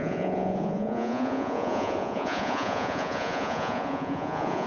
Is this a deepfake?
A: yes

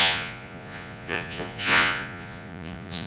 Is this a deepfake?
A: yes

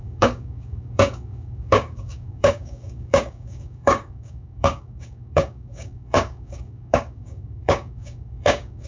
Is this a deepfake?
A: yes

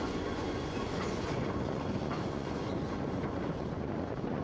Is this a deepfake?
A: yes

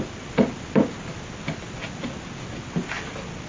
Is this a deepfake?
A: no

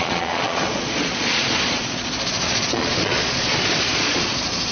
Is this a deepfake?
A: yes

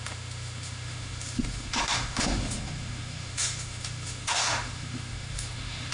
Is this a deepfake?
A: yes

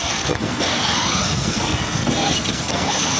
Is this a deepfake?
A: yes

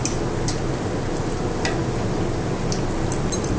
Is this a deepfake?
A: no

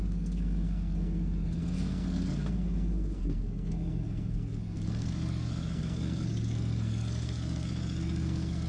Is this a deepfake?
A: yes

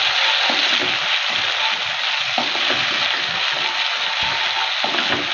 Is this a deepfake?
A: no